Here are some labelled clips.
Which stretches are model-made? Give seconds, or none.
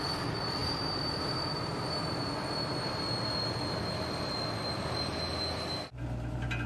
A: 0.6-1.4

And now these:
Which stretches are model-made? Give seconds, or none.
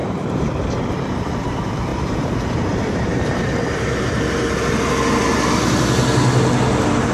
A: 0.0-1.5; 1.9-4.0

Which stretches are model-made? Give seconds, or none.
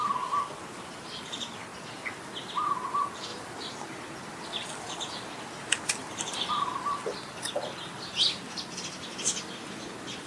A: 3.3-6.5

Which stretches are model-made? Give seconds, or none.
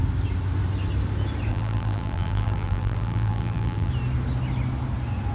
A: 1.5-3.9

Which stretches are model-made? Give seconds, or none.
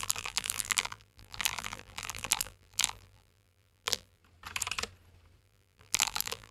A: 0.0-4.2; 5.4-6.5